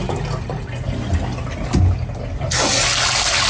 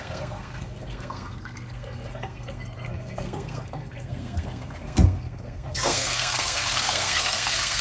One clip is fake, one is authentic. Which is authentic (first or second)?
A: first